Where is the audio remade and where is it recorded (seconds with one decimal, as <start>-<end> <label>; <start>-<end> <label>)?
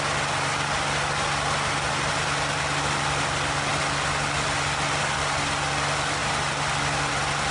0.0-7.5 recorded